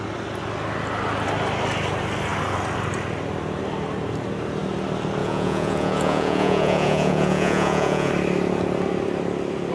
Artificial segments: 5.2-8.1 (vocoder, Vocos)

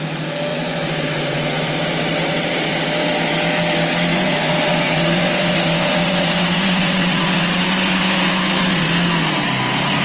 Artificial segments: 0.5-1.7 (vocoder, Vocos); 4.1-8.8

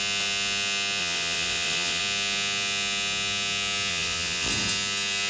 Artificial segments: 1.0-2.0 (vocoder, Vocos); 3.9-4.5